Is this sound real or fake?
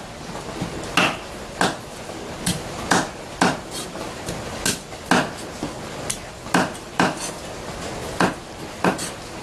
real